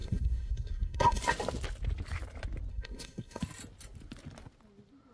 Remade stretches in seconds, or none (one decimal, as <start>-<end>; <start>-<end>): 0.0-1.2; 2.7-3.4